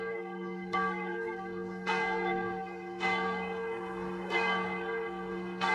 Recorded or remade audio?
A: remade